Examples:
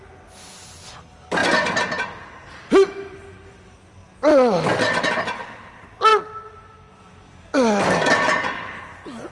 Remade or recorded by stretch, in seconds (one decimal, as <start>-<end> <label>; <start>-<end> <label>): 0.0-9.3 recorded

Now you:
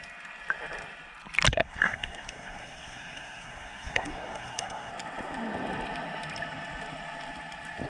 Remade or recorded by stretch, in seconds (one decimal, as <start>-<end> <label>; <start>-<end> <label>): 0.0-1.5 recorded; 1.5-4.9 remade; 4.9-7.9 recorded

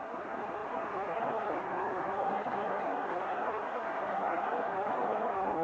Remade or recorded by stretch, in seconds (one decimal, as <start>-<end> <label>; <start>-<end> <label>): 0.0-5.6 remade

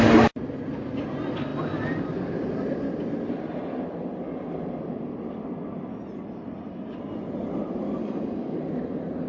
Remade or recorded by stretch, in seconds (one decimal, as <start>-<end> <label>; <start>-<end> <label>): 0.0-8.0 recorded; 8.0-8.6 remade; 8.6-9.3 recorded